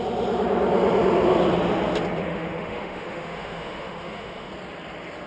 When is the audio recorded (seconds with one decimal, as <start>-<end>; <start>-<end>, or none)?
0.0-2.2; 4.5-5.3